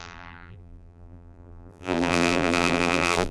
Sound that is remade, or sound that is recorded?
remade